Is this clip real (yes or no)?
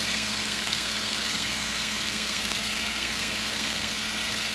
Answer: no